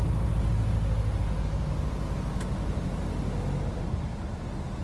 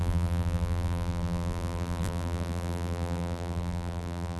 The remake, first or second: second